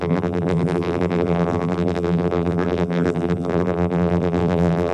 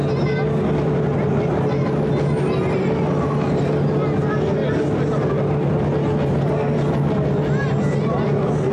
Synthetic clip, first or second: first